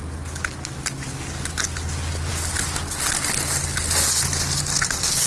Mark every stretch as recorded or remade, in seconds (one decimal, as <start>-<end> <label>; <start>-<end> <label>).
0.0-5.3 recorded